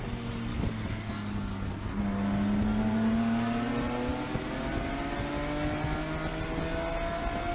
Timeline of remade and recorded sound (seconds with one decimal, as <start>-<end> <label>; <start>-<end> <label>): 0.0-0.5 recorded; 0.5-1.1 remade; 1.1-7.5 recorded

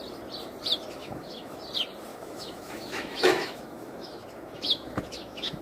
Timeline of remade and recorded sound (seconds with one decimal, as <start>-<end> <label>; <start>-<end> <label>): 0.0-1.0 recorded; 1.0-1.6 remade; 1.6-2.1 recorded; 2.1-5.6 remade

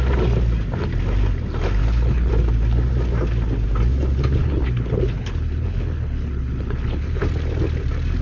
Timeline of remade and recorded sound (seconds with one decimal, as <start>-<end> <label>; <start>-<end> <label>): 0.0-1.8 recorded; 1.8-2.3 remade; 2.3-4.4 recorded; 4.4-7.2 remade; 7.2-8.2 recorded